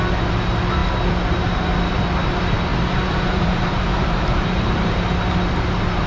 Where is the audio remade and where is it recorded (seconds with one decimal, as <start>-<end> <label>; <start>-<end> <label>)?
0.0-2.7 recorded; 2.7-4.9 remade; 4.9-6.1 recorded